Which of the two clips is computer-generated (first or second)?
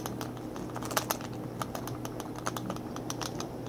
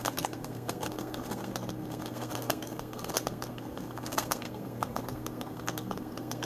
second